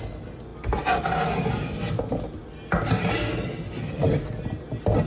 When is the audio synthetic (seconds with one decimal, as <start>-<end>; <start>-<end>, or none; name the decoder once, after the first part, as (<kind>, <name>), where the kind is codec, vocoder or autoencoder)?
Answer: none

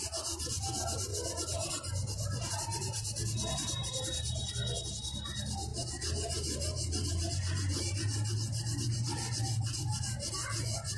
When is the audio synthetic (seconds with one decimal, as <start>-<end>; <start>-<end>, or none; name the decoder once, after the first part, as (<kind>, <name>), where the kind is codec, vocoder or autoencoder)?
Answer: 1.1-2.5 (vocoder, BigVGAN v2); 3.6-4.4; 5.7-7.8